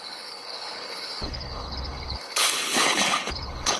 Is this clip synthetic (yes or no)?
yes